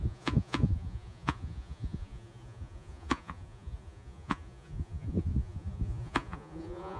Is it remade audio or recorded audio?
remade